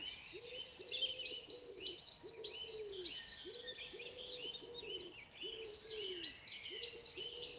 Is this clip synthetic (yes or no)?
no